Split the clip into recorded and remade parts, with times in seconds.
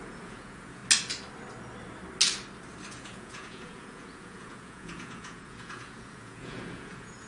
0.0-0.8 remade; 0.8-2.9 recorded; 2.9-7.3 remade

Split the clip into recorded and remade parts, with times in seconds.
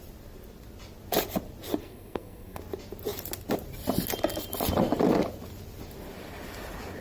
0.0-1.8 recorded; 1.8-2.6 remade; 2.6-7.0 recorded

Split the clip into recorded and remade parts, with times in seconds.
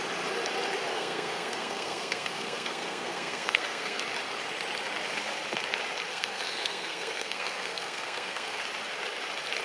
0.0-0.9 recorded; 0.9-4.0 remade; 4.0-6.1 recorded; 6.1-8.6 remade; 8.6-9.6 recorded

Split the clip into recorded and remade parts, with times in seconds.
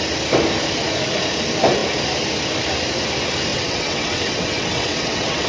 0.0-3.5 recorded; 3.5-5.5 remade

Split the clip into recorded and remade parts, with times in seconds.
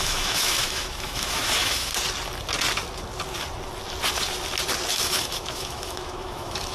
0.0-1.9 remade; 1.9-4.9 recorded; 4.9-6.7 remade